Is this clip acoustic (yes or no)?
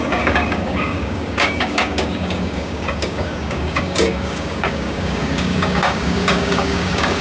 no